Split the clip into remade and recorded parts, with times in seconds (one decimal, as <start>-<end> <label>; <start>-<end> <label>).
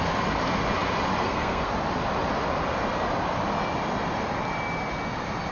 0.0-1.2 recorded; 1.2-1.7 remade; 1.7-5.5 recorded